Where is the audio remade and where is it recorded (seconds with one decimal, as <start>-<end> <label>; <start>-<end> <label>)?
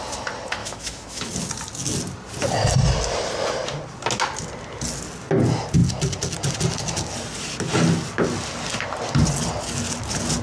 0.0-0.6 recorded; 0.6-1.3 remade; 1.3-10.4 recorded